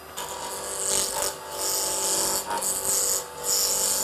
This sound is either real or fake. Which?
real